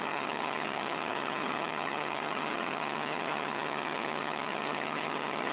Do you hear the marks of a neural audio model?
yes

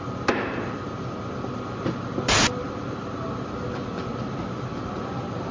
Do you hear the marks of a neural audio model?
no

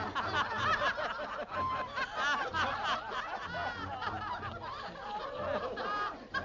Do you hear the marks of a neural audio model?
no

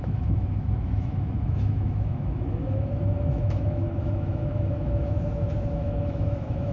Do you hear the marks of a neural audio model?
yes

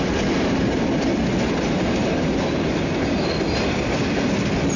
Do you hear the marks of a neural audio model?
no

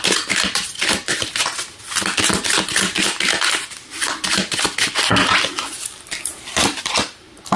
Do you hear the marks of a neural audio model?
no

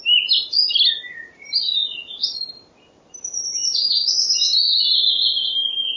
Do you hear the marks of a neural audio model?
no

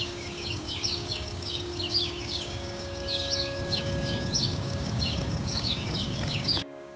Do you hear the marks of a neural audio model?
yes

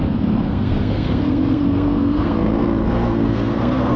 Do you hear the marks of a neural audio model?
yes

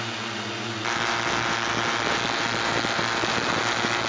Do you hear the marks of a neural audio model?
no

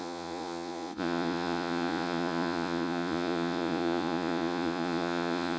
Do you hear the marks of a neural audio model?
yes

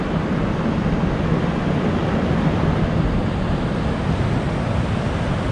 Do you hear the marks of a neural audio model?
no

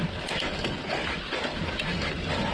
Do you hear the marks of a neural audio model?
no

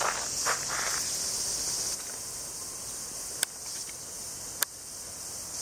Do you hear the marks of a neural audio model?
no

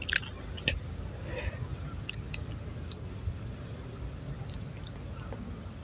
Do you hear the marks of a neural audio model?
no